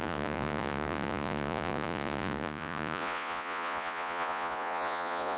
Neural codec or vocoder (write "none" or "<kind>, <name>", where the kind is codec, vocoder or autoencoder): vocoder, Vocos